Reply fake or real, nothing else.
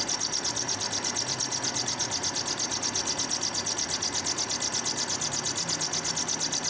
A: real